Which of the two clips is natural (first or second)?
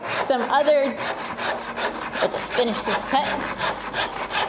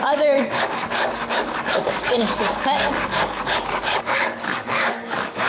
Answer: first